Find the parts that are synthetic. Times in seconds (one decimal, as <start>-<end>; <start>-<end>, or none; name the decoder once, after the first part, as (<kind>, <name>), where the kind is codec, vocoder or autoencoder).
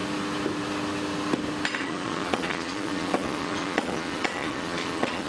1.8-5.3 (vocoder, Vocos)